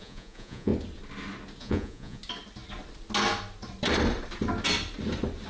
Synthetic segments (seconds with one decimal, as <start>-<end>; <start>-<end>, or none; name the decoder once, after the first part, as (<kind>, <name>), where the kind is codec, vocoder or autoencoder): 0.0-0.7 (vocoder, Vocos); 1.6-2.2